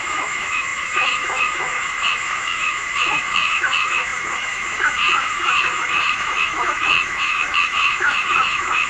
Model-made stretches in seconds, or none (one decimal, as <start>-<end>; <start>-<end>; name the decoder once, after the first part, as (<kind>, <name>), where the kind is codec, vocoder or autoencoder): 0.0-8.9 (autoencoder, DAC-VAE)